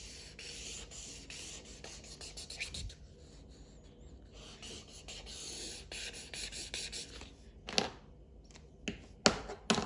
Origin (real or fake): real